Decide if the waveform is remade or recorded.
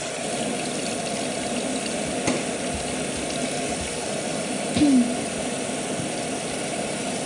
recorded